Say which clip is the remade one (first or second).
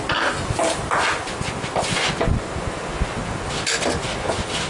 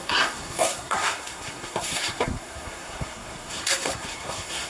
second